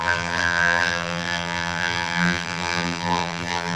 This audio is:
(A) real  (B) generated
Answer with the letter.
B